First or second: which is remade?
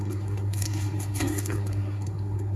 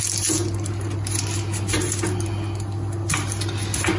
first